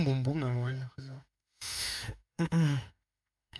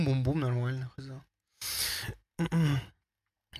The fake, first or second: first